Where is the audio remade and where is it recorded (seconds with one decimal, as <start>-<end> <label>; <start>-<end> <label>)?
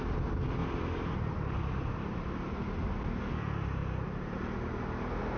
0.0-0.6 recorded; 0.6-2.6 remade; 2.6-3.8 recorded; 3.8-4.4 remade; 4.4-5.4 recorded